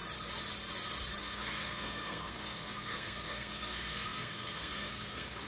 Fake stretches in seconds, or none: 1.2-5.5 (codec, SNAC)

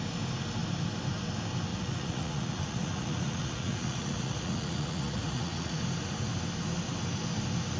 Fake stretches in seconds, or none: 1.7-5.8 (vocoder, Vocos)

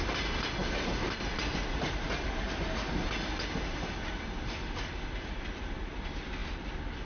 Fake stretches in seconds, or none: none

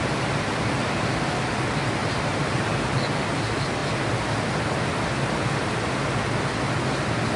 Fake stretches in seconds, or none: 0.8-1.5 (vocoder, BigVGAN v2); 2.0-2.6

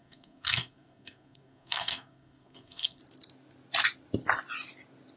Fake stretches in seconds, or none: 0.0-3.0 (codec, SNAC)

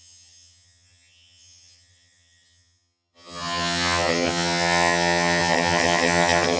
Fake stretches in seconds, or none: 0.0-6.6 (vocoder, HiFi-GAN)

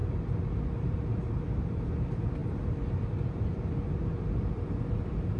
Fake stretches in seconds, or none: 0.0-1.9 (vocoder, BigVGAN v2)